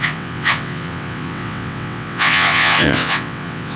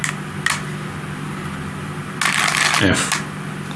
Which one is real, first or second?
second